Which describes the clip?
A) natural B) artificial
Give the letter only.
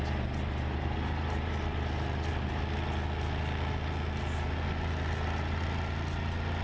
A